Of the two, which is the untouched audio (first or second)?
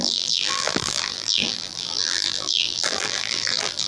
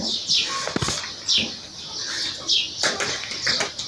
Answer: second